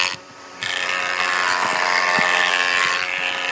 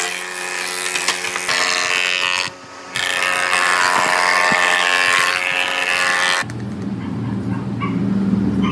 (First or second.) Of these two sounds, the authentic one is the second